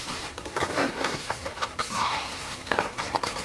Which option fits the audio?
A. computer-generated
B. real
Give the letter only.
A